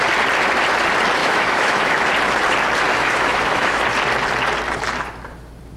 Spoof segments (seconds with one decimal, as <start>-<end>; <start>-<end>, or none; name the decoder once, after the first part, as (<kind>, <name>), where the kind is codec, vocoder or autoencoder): 1.2-2.1 (autoencoder, DAC-VAE); 2.9-3.8